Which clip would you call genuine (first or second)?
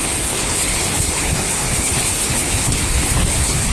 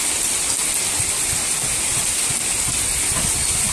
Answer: second